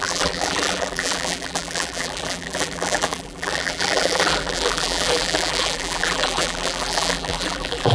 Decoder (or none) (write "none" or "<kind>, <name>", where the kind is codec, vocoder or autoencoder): vocoder, BigVGAN v2